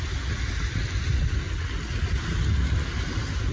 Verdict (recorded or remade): recorded